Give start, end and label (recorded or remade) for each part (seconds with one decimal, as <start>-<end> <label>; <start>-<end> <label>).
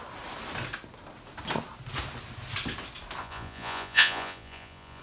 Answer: 0.0-3.2 recorded; 3.2-5.0 remade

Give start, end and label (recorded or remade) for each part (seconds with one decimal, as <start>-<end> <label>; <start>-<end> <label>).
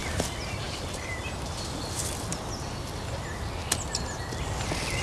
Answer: 0.0-5.0 recorded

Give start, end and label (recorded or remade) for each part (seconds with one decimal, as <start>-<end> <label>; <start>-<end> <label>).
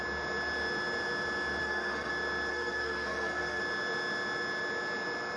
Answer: 0.0-1.6 recorded; 1.6-2.1 remade; 2.1-2.5 recorded; 2.5-3.6 remade; 3.6-5.4 recorded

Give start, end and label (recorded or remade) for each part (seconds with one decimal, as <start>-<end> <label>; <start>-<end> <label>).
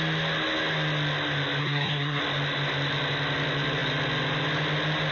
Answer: 0.0-1.6 recorded; 1.6-2.2 remade; 2.2-5.1 recorded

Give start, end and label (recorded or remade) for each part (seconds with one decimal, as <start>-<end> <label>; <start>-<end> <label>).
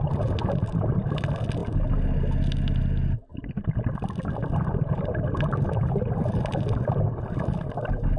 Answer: 0.0-8.2 recorded